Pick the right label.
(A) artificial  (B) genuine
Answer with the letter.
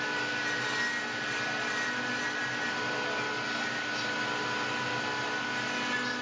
B